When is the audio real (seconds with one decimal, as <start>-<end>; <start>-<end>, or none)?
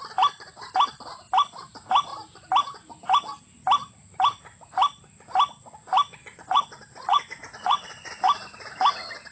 0.0-6.2; 8.3-9.3